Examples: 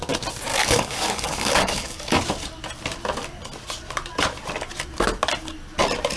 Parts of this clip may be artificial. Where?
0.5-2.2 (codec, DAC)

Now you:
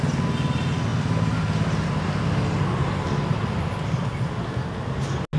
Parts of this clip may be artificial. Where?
none

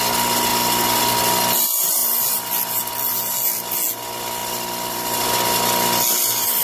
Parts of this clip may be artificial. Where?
4.4-5.2 (vocoder, BigVGAN v2)

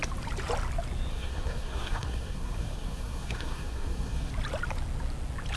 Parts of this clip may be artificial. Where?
1.1-4.3 (codec, SNAC)

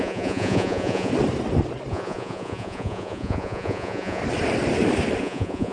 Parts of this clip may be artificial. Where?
0.0-1.1 (vocoder, Vocos); 1.9-4.2; 5.2-5.7

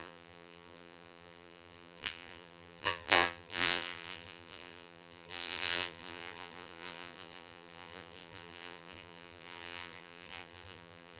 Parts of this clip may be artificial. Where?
0.0-11.2 (vocoder, BigVGAN v2)